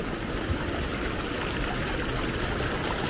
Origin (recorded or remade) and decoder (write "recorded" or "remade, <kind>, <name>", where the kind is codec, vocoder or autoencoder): recorded